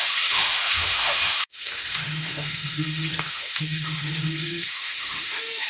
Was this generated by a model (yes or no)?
yes